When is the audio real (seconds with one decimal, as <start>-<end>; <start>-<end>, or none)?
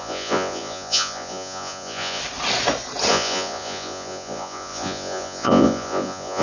2.2-3.1